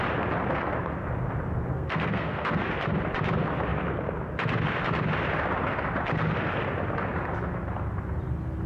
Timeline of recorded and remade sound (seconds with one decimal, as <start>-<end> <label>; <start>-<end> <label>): 0.0-1.7 recorded; 1.7-2.6 remade; 2.6-8.7 recorded